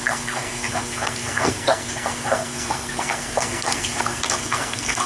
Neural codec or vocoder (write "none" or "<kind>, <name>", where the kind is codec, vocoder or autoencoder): codec, SNAC